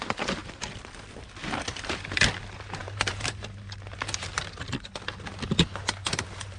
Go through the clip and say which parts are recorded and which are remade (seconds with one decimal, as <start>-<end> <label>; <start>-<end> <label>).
0.0-2.8 recorded; 2.8-4.7 remade; 4.7-6.0 recorded; 6.0-6.6 remade